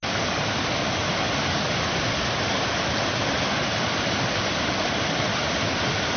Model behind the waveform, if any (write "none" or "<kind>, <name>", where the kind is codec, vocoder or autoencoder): none